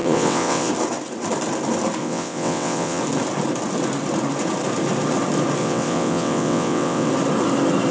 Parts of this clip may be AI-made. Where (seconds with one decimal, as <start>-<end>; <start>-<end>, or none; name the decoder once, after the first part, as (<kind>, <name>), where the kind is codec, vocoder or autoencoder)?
0.0-0.7 (vocoder, WaveNeXt); 2.0-3.0; 5.6-7.1